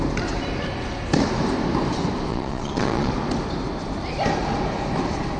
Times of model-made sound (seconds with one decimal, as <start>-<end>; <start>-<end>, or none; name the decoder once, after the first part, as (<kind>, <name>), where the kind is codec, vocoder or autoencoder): 2.3-3.1 (vocoder, Vocos)